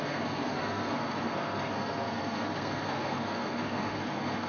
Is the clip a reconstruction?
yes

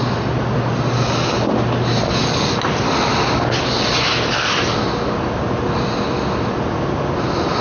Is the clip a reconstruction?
no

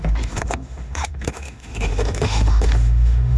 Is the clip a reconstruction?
yes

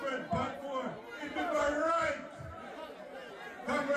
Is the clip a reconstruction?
no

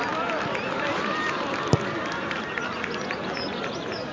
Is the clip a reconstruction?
no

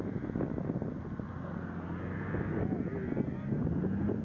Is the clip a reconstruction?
no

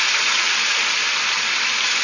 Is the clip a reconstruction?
no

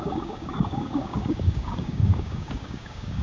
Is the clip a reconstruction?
yes